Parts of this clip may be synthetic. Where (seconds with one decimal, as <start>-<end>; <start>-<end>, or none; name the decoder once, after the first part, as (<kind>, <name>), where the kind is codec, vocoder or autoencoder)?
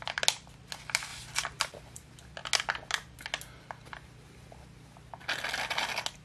none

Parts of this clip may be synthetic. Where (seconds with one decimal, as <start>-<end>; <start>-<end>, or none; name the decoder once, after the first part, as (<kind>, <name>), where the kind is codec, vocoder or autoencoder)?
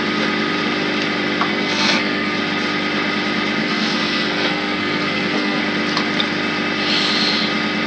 1.5-2.4 (codec, SNAC); 3.6-5.6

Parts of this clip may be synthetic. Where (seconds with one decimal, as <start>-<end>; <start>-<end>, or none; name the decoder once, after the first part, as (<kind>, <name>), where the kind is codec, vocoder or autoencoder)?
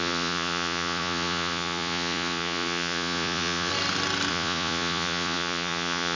0.0-3.7 (vocoder, Vocos); 4.3-6.1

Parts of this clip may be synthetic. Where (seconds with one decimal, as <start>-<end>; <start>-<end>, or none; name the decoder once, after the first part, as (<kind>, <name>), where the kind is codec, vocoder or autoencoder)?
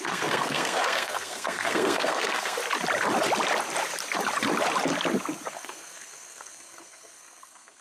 0.0-2.6 (codec, SNAC); 5.5-7.8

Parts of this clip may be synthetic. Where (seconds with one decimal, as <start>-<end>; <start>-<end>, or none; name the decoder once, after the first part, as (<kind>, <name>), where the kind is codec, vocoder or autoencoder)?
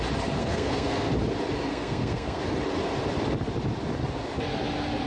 0.4-1.1 (codec, SNAC); 1.7-2.4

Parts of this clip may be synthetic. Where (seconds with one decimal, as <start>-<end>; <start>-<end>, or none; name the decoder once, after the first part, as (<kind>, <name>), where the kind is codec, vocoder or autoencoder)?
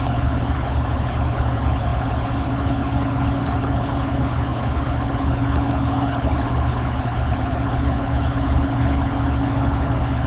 0.0-10.3 (codec, HILCodec)